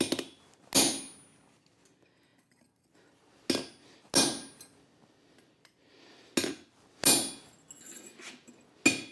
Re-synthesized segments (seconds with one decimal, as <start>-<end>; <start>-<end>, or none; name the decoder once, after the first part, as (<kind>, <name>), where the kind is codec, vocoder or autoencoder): none